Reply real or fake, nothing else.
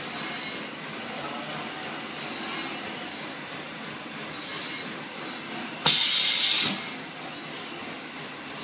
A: real